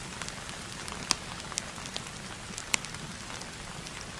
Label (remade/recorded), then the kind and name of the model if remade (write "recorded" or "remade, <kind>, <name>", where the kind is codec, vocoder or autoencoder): recorded